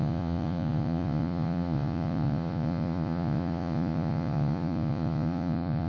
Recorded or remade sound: remade